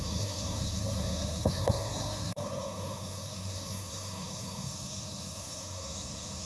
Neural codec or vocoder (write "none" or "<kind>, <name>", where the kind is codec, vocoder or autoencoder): codec, SNAC